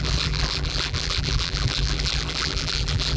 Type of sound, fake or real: fake